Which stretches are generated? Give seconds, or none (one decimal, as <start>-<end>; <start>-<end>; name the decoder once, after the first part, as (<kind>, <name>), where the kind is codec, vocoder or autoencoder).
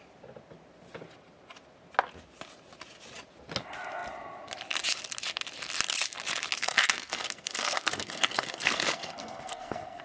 6.6-10.0 (codec, SNAC)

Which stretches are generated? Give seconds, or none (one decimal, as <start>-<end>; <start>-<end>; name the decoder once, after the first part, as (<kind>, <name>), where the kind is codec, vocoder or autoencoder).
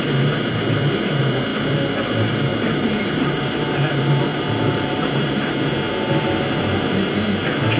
2.5-3.6 (vocoder, BigVGAN v2); 4.3-5.5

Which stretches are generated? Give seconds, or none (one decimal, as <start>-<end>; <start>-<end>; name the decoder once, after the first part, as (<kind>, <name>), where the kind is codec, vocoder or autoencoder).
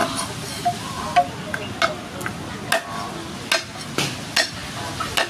none